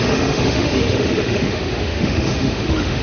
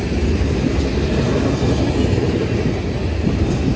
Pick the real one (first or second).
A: second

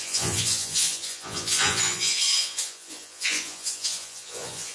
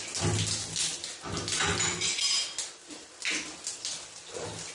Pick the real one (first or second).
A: second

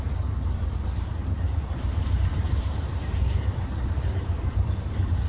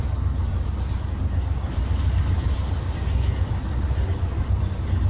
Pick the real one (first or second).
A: second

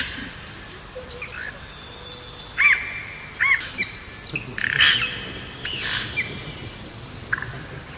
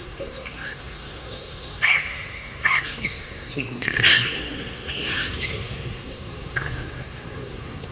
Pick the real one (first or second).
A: first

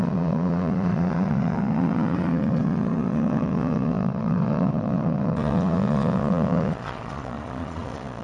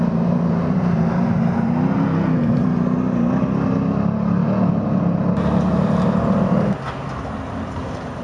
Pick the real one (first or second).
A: second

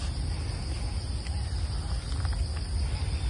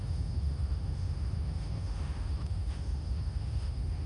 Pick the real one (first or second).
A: first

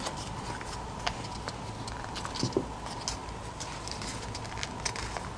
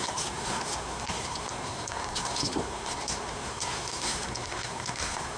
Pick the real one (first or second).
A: first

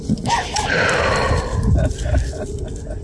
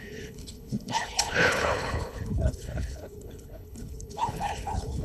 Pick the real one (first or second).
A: first